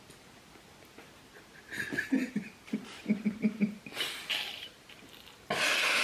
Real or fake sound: real